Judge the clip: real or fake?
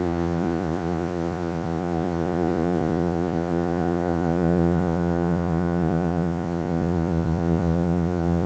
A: fake